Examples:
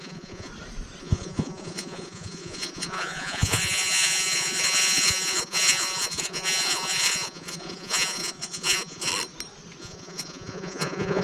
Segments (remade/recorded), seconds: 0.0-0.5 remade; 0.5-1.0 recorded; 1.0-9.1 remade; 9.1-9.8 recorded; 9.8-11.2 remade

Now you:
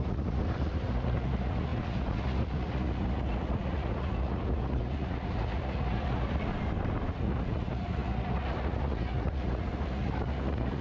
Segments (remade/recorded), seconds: 0.0-6.5 remade; 6.5-7.1 recorded; 7.1-10.8 remade

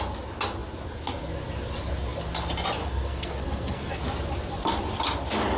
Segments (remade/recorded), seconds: 0.0-2.8 recorded; 2.8-4.0 remade; 4.0-5.6 recorded

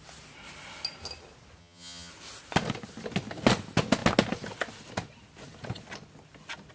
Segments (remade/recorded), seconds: 0.0-1.6 recorded; 1.6-2.1 remade; 2.1-6.7 recorded

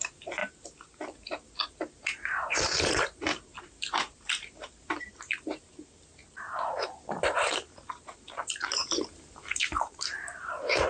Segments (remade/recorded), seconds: 0.0-6.2 remade; 6.2-7.0 recorded; 7.0-10.9 remade

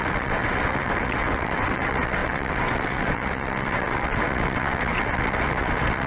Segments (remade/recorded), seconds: 0.0-6.1 remade

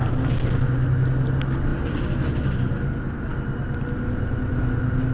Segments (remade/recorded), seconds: 0.0-5.1 recorded

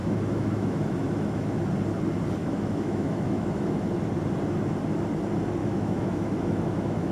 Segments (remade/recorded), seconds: 0.0-1.6 remade; 1.6-2.4 recorded; 2.4-3.8 remade; 3.8-5.6 recorded; 5.6-7.1 remade